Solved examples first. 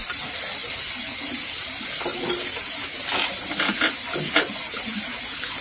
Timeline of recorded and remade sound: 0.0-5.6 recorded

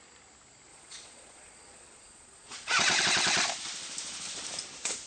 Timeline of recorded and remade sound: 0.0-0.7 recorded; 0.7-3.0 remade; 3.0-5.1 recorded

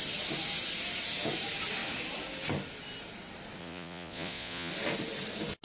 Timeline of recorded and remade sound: 0.0-3.6 recorded; 3.6-4.7 remade; 4.7-5.6 recorded

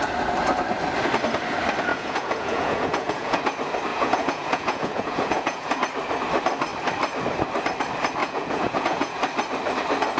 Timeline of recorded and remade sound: 0.0-1.9 recorded; 1.9-3.4 remade; 3.4-3.9 recorded; 3.9-5.8 remade; 5.8-8.2 recorded; 8.2-9.2 remade; 9.2-10.2 recorded